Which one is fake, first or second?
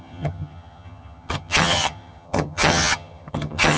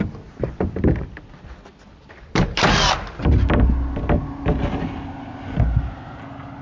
first